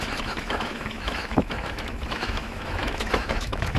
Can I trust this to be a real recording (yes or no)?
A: no